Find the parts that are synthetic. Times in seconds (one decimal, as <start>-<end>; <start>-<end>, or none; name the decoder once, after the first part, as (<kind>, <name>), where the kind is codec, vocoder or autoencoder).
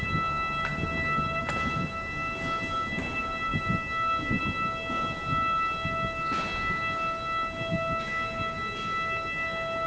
none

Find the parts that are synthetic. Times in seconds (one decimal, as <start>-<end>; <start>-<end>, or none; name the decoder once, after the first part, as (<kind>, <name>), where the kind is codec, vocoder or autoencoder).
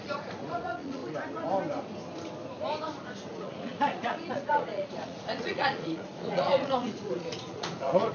0.0-1.0 (vocoder, Vocos); 3.3-8.1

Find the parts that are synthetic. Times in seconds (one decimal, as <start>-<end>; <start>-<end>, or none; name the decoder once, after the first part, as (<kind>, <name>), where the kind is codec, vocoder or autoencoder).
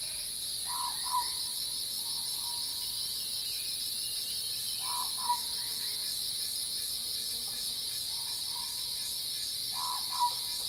7.1-8.4 (vocoder, Vocos)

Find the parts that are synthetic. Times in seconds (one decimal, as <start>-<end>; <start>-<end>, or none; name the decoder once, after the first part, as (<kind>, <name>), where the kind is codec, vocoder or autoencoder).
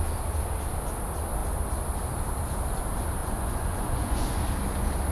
3.2-4.4 (vocoder, Vocos)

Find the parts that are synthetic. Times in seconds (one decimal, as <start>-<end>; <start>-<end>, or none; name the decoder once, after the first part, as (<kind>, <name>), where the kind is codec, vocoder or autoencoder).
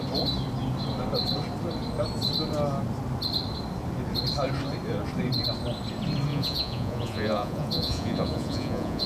6.3-9.1 (vocoder, Vocos)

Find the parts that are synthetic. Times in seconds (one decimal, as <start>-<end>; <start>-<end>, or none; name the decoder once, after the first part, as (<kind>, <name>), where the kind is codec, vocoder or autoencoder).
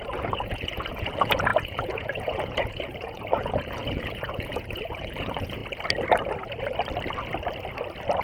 0.0-5.6 (vocoder, Vocos)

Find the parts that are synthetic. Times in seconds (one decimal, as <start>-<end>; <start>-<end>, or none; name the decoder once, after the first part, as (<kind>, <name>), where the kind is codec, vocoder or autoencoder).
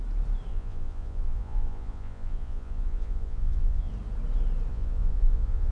0.5-3.9 (vocoder, Vocos); 4.7-5.7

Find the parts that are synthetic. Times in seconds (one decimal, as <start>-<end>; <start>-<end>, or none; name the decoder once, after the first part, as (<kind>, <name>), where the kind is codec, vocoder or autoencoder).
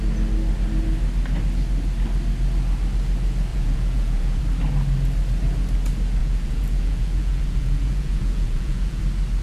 3.5-4.4 (vocoder, Vocos); 6.2-9.0